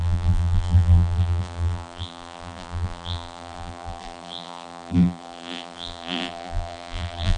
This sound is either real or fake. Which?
fake